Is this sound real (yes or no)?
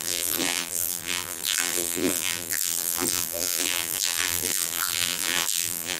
no